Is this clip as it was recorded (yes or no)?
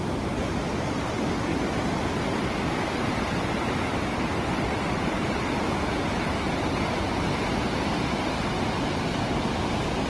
yes